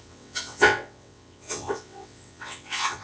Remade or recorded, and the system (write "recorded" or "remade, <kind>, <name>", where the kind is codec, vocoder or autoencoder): remade, vocoder, WaveNeXt